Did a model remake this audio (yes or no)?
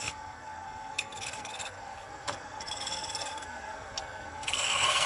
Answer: yes